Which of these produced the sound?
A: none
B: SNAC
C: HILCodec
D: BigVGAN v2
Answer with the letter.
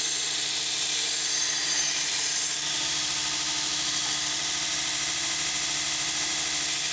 A